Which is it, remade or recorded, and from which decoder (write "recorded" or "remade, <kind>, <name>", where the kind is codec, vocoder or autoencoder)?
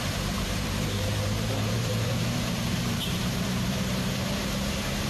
remade, vocoder, BigVGAN v2